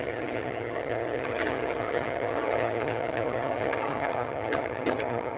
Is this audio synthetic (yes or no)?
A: yes